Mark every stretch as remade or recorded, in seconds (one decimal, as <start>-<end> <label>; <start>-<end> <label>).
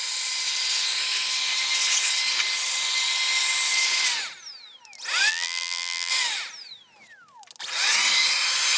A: 0.0-5.3 recorded; 5.3-6.1 remade; 6.1-8.8 recorded